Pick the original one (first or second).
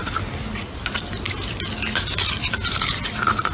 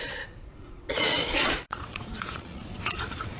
first